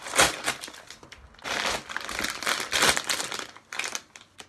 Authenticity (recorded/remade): recorded